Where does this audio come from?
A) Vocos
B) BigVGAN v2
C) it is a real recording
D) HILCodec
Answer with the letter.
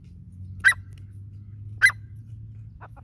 C